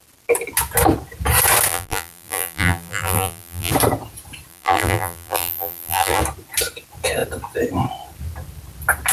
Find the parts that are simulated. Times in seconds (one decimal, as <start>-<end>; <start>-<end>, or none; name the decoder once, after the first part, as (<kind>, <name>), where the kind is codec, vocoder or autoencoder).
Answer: 1.7-3.7 (vocoder, BigVGAN v2); 4.5-6.2